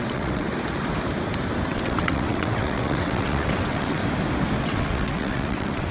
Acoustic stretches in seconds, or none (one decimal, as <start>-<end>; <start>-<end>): 0.5-1.7; 4.0-4.6